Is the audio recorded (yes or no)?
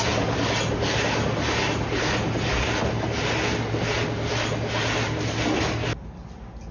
yes